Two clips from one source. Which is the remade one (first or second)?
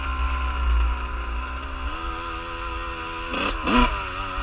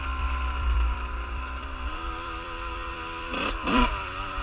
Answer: second